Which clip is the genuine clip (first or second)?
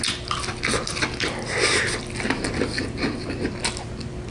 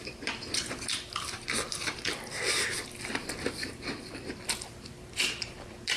first